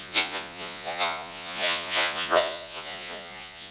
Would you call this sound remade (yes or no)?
yes